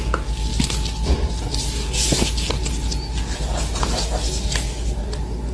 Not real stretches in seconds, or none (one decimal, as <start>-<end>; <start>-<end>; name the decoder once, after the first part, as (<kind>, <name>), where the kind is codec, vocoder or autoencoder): none